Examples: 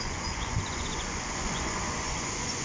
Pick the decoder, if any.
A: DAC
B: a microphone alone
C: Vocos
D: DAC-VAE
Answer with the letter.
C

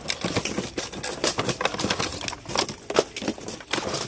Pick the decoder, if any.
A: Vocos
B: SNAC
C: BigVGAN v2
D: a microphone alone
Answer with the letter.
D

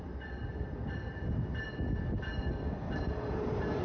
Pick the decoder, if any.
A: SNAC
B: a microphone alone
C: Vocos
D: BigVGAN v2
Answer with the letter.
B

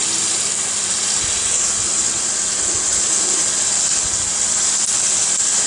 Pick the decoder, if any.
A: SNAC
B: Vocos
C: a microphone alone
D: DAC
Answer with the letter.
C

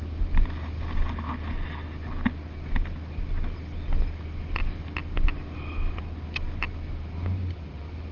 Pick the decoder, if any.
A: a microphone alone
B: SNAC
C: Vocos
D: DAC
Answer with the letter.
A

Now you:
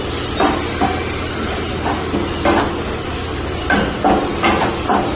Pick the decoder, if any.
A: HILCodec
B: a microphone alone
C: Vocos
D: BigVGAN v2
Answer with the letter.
B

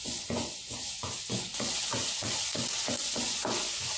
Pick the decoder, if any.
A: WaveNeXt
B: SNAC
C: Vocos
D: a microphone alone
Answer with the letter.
C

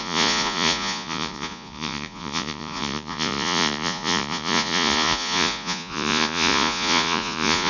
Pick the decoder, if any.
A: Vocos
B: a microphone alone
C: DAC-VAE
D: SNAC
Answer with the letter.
A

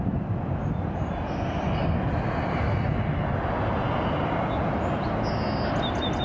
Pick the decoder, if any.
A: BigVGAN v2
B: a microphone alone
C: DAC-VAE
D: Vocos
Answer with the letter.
B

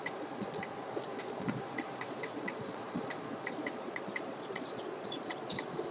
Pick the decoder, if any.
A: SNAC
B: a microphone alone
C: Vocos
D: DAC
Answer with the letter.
C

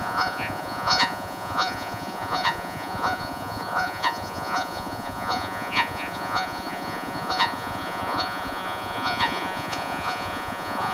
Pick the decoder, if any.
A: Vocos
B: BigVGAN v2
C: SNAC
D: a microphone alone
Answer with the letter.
A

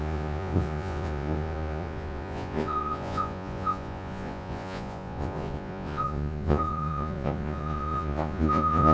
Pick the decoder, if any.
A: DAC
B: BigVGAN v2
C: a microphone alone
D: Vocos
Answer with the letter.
D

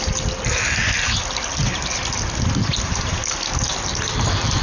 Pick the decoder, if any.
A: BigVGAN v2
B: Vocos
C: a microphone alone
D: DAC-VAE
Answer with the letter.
C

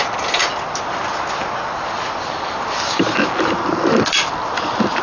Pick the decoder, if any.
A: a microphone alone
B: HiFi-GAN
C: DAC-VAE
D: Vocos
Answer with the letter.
A